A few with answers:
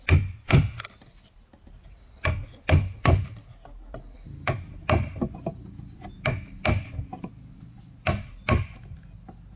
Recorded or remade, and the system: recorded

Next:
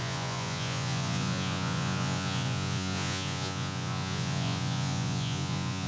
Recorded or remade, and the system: remade, vocoder, Vocos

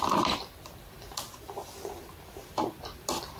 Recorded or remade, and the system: remade, vocoder, BigVGAN v2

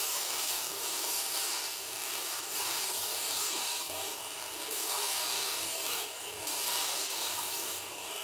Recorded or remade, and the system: remade, codec, DAC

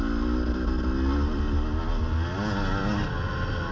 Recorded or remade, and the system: recorded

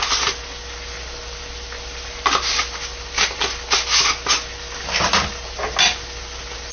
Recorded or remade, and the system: recorded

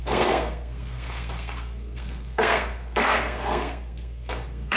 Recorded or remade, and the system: remade, codec, SNAC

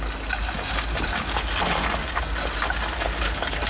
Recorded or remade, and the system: recorded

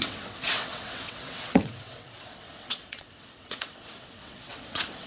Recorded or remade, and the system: remade, vocoder, WaveNeXt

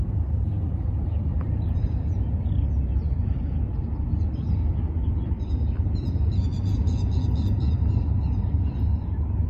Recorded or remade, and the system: recorded